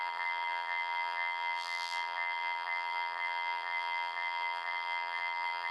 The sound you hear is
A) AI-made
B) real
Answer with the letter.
A